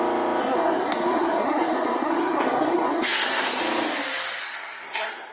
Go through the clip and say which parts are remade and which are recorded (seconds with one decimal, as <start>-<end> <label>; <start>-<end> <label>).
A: 0.0-0.4 recorded; 0.4-3.6 remade; 3.6-4.4 recorded; 4.4-5.3 remade